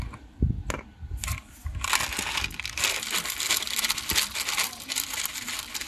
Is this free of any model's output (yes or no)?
yes